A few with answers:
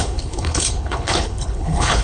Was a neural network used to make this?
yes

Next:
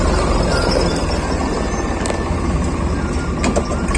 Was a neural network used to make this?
no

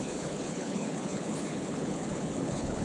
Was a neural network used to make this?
yes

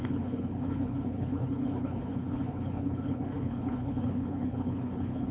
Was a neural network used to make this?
yes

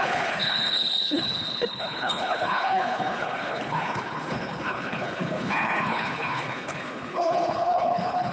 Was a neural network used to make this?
yes